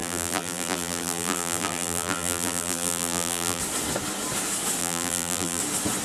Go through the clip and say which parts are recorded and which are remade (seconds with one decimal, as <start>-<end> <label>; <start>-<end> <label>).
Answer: 0.0-3.6 remade; 3.6-4.8 recorded; 4.8-5.6 remade; 5.6-6.0 recorded